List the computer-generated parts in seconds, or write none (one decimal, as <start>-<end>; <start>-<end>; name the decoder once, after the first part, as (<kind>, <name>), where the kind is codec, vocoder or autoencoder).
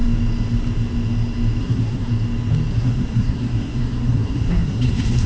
1.6-2.1 (codec, SNAC); 2.7-5.3